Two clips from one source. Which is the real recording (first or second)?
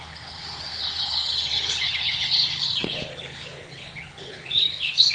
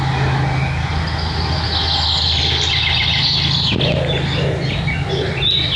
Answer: second